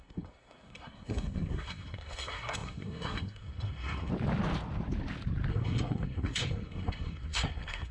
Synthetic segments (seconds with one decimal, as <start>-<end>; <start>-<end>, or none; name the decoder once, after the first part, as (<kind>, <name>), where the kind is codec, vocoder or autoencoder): 0.0-4.1 (codec, SNAC); 5.5-7.9

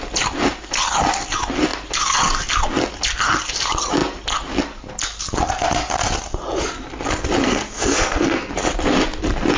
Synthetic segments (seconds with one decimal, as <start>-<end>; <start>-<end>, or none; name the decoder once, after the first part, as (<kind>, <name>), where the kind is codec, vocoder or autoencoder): 7.4-8.5 (codec, SNAC)

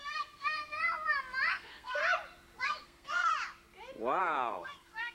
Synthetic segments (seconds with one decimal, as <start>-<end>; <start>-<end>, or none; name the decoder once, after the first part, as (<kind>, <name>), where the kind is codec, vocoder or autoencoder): 0.0-0.8 (codec, SNAC); 1.5-2.0; 2.6-3.3; 4.2-5.1

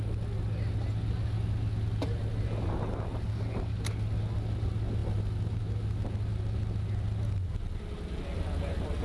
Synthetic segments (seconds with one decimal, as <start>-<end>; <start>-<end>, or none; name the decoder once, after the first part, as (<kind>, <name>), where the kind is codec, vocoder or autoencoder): none

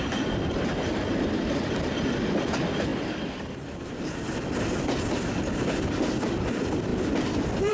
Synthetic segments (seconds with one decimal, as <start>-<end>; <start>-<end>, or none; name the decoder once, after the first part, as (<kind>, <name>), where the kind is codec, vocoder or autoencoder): none

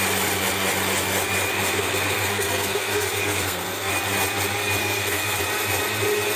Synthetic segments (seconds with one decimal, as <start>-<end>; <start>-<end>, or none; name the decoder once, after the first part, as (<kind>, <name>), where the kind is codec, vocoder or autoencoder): 1.5-3.9 (codec, SNAC); 4.8-5.4